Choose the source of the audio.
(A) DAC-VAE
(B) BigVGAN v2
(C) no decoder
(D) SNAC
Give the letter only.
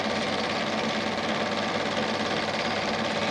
C